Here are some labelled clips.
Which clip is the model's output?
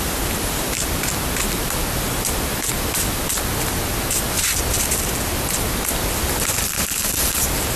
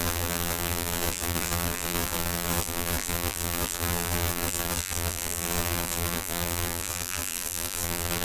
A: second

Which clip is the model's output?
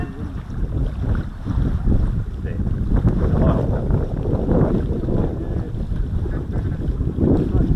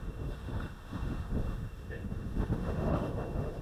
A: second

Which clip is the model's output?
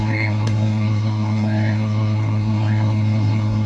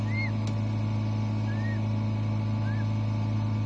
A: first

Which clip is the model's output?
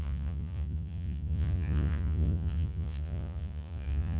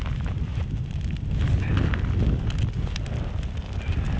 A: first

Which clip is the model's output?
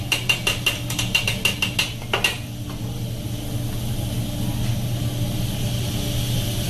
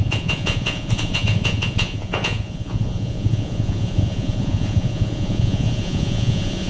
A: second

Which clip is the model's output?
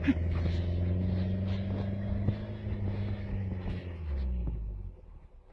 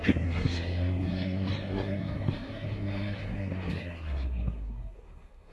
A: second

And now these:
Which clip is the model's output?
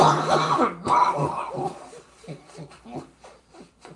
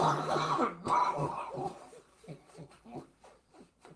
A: second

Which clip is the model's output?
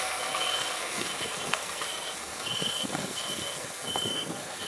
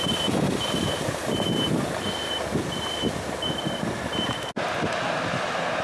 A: first